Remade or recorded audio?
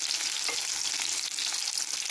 recorded